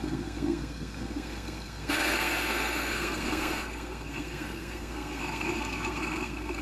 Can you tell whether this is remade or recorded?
remade